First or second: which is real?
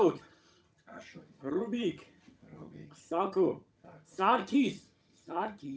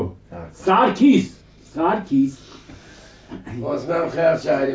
second